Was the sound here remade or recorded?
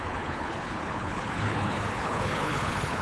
remade